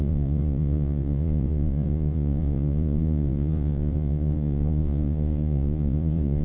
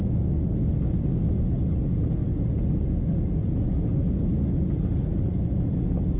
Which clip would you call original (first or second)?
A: second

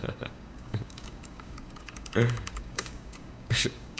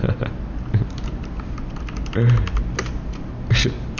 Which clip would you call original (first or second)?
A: second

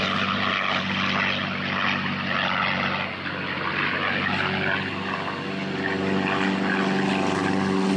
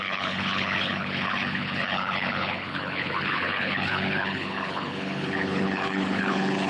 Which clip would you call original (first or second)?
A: first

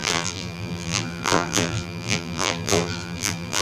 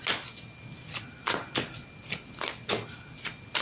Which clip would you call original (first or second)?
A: second